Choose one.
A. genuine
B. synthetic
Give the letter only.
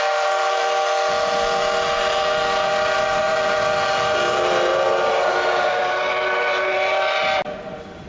A